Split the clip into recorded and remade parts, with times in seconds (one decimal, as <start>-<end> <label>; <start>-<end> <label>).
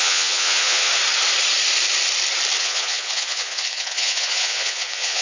0.0-0.9 remade; 0.9-2.6 recorded; 2.6-5.2 remade